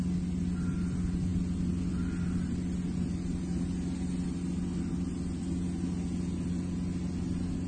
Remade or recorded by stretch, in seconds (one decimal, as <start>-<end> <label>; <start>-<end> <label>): 0.0-7.7 recorded